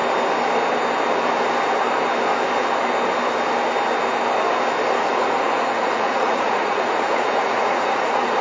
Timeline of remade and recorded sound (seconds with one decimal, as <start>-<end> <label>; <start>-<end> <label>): 0.0-5.0 recorded; 5.0-8.4 remade